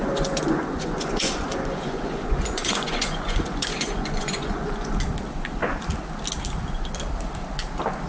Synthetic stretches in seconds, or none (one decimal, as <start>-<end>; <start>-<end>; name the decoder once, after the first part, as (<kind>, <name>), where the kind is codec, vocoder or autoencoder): 0.0-4.9 (vocoder, Vocos)